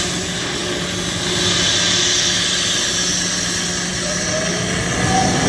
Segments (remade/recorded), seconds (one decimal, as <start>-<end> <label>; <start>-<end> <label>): 0.0-5.5 recorded